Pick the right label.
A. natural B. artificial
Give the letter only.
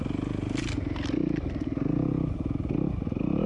A